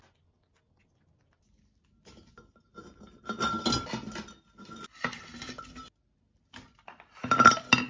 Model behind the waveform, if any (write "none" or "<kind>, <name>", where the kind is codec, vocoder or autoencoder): none